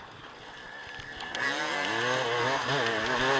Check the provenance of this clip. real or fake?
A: real